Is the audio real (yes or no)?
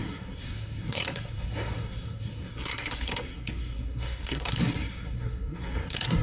no